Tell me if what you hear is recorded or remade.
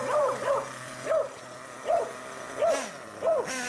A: recorded